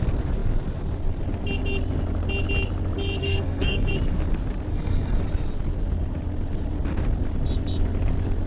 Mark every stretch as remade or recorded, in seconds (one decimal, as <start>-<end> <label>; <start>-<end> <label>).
0.0-3.2 recorded; 3.2-3.9 remade; 3.9-4.7 recorded; 4.7-5.2 remade; 5.2-8.5 recorded